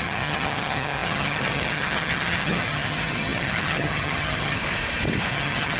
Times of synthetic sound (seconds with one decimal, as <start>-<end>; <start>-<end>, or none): 0.0-4.6; 5.3-5.8